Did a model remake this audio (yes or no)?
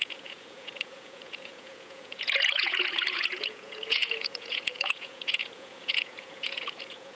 yes